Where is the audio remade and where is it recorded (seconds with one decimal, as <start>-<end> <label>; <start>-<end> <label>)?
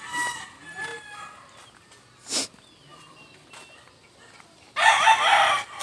0.0-5.8 recorded